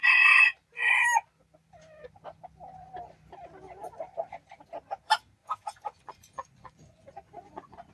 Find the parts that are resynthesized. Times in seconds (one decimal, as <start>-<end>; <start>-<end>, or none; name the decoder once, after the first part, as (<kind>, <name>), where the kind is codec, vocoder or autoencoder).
5.4-7.9 (vocoder, Vocos)